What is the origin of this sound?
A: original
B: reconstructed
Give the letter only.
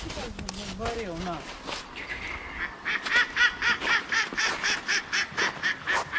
A